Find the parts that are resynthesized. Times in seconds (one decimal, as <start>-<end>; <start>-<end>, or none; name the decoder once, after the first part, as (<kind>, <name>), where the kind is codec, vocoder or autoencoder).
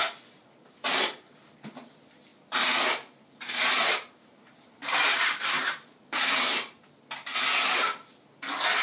2.3-6.9 (vocoder, BigVGAN v2)